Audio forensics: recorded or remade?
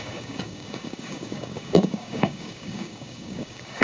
remade